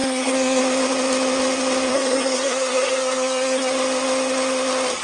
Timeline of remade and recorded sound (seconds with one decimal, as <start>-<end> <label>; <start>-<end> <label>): 0.0-0.6 remade; 0.6-1.9 recorded; 1.9-3.7 remade; 3.7-5.0 recorded